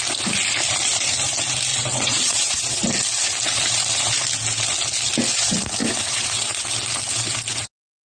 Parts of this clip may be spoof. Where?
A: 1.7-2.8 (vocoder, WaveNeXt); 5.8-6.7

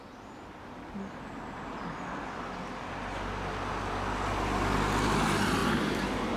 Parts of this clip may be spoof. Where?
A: 5.6-6.4 (vocoder, BigVGAN v2)

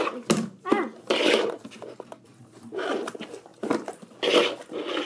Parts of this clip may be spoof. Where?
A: 3.5-4.3 (vocoder, BigVGAN v2)

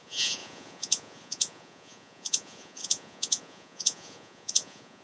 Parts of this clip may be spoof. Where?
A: 0.0-5.0 (vocoder, Vocos)